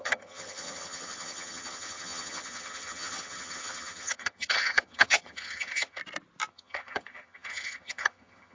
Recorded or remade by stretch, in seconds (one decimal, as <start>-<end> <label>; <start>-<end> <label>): 0.0-6.0 remade; 6.0-6.5 recorded; 6.5-8.5 remade